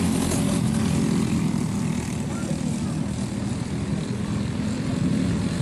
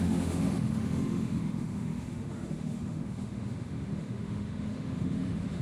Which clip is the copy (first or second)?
second